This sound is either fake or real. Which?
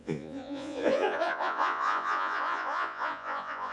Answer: fake